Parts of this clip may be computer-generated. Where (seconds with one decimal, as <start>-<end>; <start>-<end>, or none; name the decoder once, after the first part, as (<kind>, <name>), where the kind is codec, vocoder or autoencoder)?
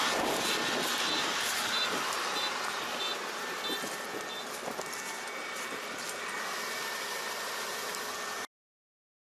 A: 1.2-2.3 (vocoder, BigVGAN v2); 5.4-7.7